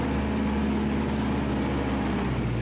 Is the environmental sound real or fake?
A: real